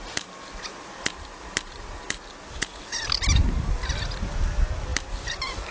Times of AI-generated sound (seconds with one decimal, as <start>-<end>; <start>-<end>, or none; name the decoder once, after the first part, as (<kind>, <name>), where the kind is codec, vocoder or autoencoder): none